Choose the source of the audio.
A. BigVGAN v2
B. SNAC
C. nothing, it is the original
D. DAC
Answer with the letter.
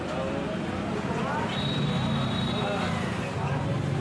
C